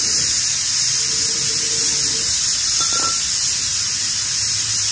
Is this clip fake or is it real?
real